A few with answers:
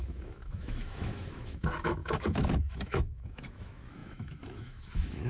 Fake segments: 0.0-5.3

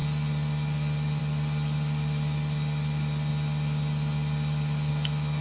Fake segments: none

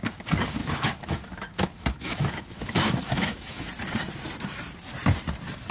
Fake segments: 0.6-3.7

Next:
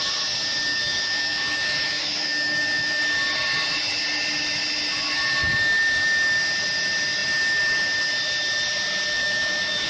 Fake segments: 0.7-3.0; 9.1-9.9

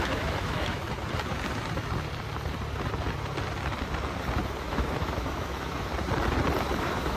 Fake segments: 0.0-0.8; 4.6-5.9; 6.8-7.2

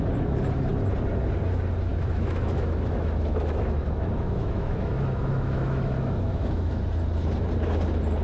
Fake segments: 1.9-6.8

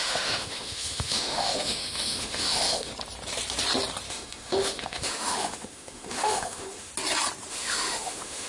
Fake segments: 0.0-2.9; 4.1-6.9; 7.5-8.5

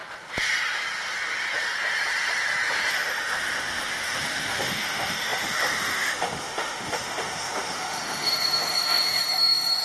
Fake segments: 2.9-9.8